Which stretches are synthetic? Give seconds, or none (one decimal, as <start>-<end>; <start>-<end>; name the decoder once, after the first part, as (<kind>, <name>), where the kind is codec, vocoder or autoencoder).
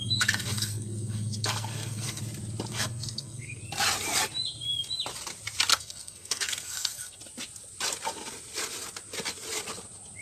0.0-2.2 (codec, SNAC); 2.7-3.6; 5.7-7.2